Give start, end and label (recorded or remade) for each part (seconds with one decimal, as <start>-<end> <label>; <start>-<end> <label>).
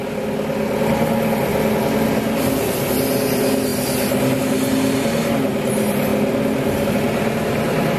0.0-8.0 recorded